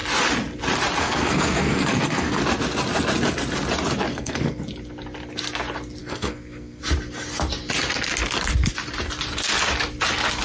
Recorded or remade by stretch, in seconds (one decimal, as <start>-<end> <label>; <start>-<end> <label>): 0.0-1.0 recorded; 1.0-2.4 remade; 2.4-4.1 recorded; 4.1-4.6 remade; 4.6-6.0 recorded; 6.0-6.8 remade; 6.8-10.4 recorded